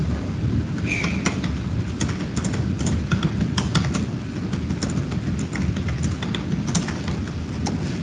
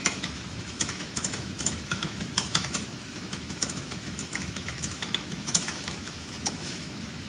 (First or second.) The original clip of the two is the first